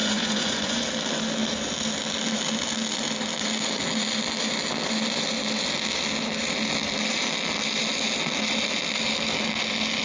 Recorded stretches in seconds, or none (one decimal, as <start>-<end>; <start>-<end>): 0.8-10.0